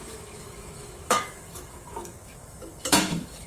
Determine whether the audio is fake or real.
fake